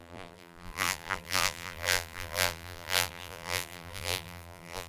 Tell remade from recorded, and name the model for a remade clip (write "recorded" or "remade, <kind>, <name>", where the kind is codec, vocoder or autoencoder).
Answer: remade, vocoder, BigVGAN v2